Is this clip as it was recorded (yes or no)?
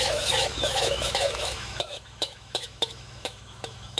no